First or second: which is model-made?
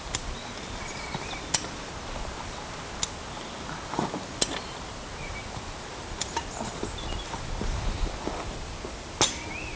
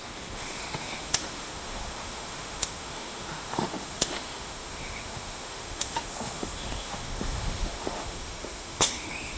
second